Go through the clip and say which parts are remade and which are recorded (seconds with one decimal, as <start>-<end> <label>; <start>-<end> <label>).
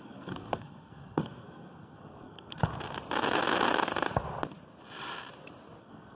0.0-2.6 remade; 2.6-5.8 recorded; 5.8-6.2 remade